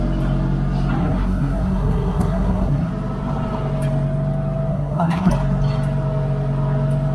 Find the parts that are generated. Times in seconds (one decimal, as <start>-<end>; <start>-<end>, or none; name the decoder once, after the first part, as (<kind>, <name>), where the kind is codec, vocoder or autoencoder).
1.0-2.9 (codec, SNAC); 4.7-5.3